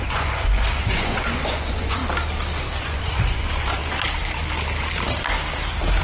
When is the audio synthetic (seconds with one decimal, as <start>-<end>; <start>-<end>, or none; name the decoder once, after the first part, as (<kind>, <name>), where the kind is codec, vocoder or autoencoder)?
0.0-2.0 (vocoder, Vocos); 2.8-3.8